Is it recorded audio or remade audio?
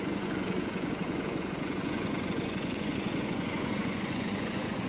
remade